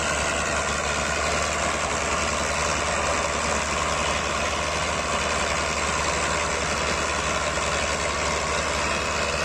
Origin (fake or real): real